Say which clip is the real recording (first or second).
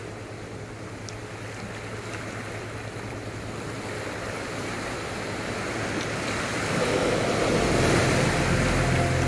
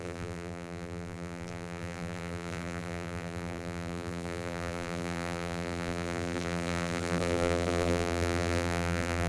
first